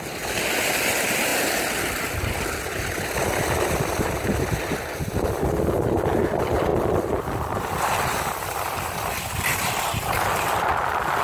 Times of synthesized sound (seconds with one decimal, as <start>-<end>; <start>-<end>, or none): none